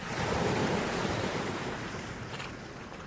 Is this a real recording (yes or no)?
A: yes